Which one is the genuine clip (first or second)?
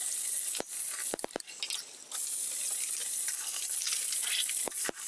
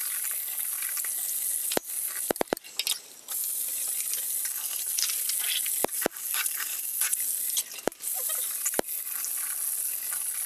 second